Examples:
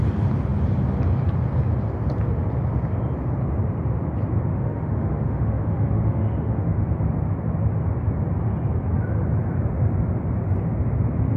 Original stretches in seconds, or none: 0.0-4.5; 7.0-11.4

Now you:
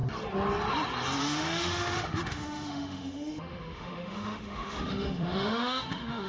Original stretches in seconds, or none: 0.0-1.2

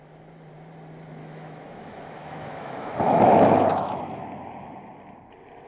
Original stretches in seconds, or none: 0.0-1.2; 4.0-5.7

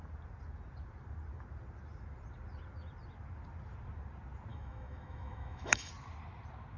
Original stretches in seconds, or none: 0.0-4.5; 5.9-6.8

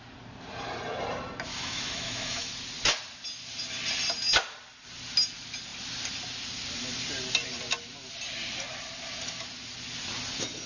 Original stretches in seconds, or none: 0.0-1.5; 2.5-10.7

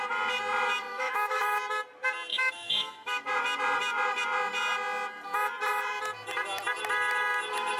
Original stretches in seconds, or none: 0.0-0.9; 1.4-2.3; 3.3-7.8

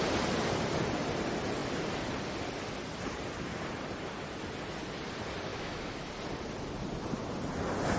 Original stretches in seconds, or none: 0.0-5.5; 6.1-8.0

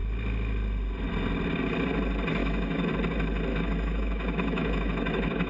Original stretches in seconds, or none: 0.0-2.4; 2.9-3.5